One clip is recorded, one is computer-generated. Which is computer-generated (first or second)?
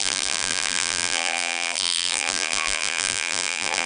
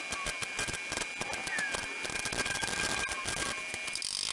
first